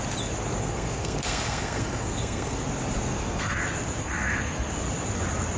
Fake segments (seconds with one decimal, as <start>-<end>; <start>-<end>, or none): 0.6-2.6; 3.1-3.6; 4.0-4.7